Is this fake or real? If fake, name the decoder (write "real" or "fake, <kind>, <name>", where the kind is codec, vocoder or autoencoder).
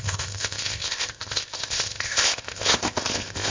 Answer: fake, codec, ZipCodec